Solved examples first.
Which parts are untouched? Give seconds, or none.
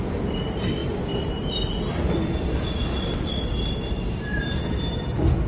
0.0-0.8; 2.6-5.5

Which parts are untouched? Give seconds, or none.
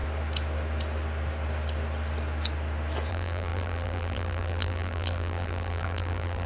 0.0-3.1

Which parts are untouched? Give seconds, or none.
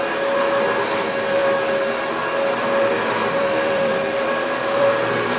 0.0-3.2; 4.9-5.4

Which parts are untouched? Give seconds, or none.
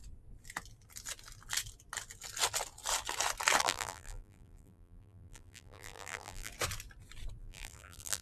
0.0-3.6; 6.5-7.4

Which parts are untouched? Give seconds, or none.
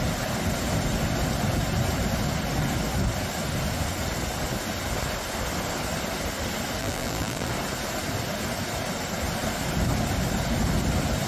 0.0-6.8; 7.5-11.3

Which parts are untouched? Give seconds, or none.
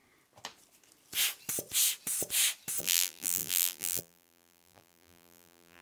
0.0-2.8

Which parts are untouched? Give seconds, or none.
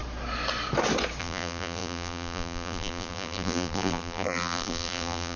0.0-1.2